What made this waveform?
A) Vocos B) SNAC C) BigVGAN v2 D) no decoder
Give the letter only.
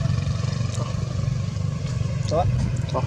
D